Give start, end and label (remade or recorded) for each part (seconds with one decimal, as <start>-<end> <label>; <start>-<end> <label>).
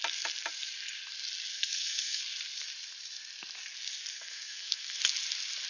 0.0-1.5 recorded; 1.5-2.2 remade; 2.2-4.1 recorded; 4.1-5.0 remade; 5.0-5.7 recorded